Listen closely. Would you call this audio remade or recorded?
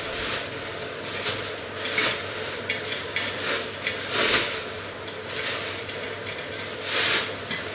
recorded